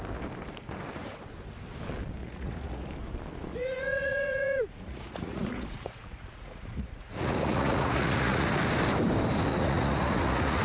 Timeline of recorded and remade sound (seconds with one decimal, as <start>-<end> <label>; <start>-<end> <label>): 0.0-2.2 recorded; 2.2-2.9 remade; 2.9-3.5 recorded; 3.5-8.6 remade; 8.6-9.5 recorded; 9.5-10.6 remade